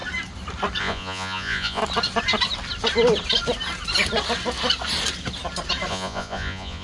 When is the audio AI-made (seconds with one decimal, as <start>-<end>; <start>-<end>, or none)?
0.8-1.8; 5.9-6.8